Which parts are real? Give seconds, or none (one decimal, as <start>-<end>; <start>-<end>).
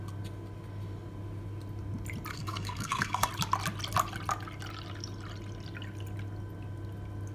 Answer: 0.0-2.3; 3.3-7.3